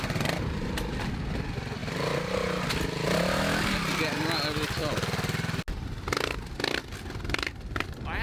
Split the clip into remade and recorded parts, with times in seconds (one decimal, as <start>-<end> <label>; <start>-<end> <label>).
0.0-8.2 recorded